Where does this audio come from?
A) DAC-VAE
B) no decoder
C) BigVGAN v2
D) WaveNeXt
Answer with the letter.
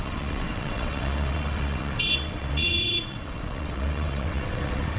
D